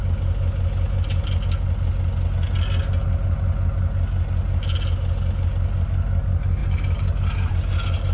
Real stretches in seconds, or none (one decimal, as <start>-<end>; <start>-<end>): 0.0-8.1